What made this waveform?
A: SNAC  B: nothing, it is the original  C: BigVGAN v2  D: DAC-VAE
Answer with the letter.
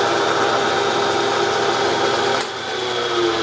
B